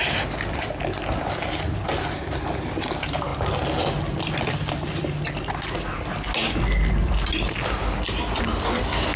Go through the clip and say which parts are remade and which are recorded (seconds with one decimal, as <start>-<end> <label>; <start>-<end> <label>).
0.0-9.2 recorded